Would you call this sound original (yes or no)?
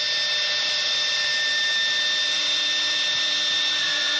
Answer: yes